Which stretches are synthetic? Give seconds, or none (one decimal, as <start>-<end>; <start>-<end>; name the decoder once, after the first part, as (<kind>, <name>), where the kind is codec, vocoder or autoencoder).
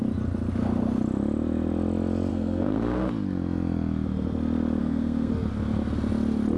2.3-3.1 (codec, SNAC); 4.8-5.3